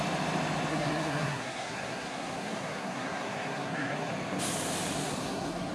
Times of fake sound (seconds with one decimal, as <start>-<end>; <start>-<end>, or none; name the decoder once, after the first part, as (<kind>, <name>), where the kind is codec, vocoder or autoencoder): 0.7-4.1 (codec, SNAC); 5.0-5.7